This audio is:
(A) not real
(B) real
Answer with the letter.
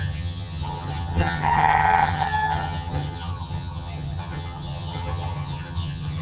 A